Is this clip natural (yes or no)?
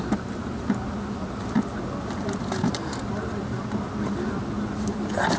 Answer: yes